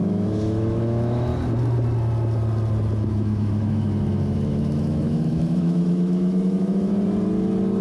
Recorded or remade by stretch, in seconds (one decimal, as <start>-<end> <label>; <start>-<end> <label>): 0.0-1.3 remade; 1.3-3.1 recorded; 3.1-6.9 remade; 6.9-7.8 recorded